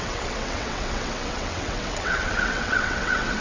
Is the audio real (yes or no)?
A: no